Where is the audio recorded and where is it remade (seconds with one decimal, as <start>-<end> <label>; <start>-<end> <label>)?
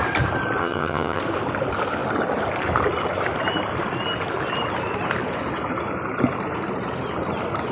0.0-0.6 recorded; 0.6-1.2 remade; 1.2-7.7 recorded